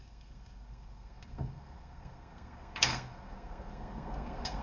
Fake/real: fake